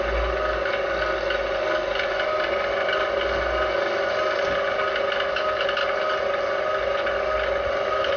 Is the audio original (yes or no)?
yes